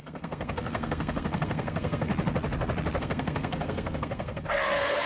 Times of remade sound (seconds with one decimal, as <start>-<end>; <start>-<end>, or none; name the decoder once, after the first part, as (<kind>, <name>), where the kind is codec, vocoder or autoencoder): 0.0-2.1 (codec, SNAC); 3.0-5.1